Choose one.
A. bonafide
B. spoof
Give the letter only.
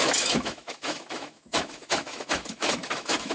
B